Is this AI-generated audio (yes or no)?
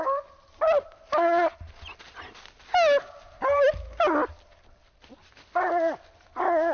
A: no